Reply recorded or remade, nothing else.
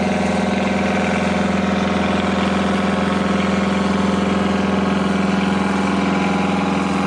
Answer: recorded